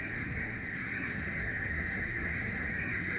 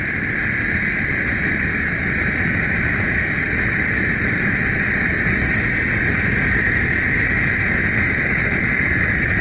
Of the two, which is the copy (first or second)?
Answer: first